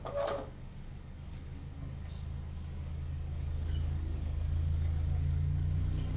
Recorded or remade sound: remade